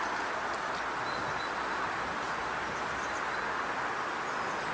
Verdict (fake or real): real